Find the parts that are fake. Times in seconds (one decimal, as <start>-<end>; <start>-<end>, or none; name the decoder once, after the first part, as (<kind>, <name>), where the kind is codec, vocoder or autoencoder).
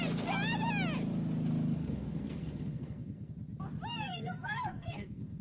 1.8-3.3 (codec, SNAC); 3.9-5.4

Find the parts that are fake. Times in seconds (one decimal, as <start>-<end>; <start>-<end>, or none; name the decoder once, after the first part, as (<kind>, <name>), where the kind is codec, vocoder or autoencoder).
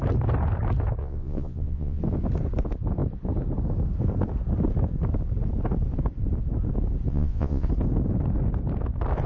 1.0-2.0 (vocoder, Vocos); 7.1-7.7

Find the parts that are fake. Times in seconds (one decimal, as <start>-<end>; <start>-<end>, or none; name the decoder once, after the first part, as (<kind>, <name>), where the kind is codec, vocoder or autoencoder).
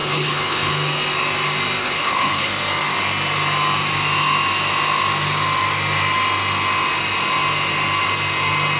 0.0-0.7 (codec, HILCodec); 1.8-2.5